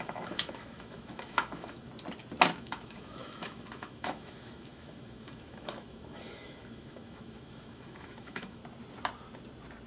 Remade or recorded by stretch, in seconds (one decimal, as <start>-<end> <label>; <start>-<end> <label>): 0.0-1.9 remade; 1.9-2.6 recorded; 2.6-8.6 remade; 8.6-9.9 recorded